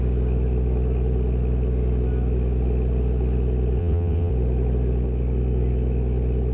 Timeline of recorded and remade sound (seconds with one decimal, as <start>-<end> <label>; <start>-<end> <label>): 0.0-3.8 recorded; 3.8-4.3 remade; 4.3-6.5 recorded